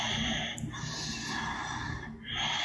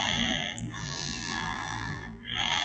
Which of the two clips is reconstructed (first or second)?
second